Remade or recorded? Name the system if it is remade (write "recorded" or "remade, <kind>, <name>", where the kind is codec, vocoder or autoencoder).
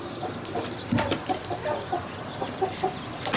recorded